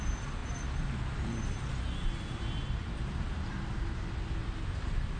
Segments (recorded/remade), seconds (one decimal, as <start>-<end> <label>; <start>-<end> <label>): 0.0-5.2 recorded